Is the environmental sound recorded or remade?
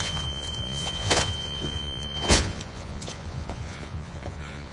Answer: remade